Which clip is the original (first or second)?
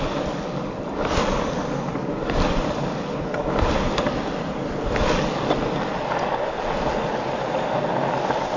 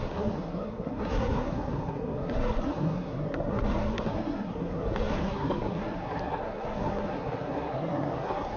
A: first